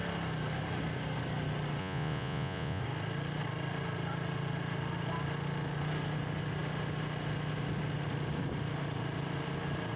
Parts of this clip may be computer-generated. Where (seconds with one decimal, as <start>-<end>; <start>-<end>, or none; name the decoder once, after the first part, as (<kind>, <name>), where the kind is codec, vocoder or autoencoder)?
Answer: 1.8-2.8 (vocoder, Vocos)